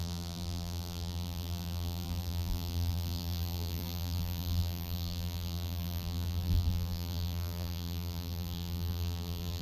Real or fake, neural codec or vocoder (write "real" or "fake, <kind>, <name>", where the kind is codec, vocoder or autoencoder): fake, vocoder, BigVGAN v2